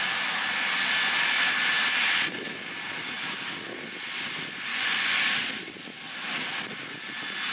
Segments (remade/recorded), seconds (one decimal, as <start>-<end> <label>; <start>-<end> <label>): 0.0-4.7 recorded; 4.7-5.2 remade; 5.2-7.5 recorded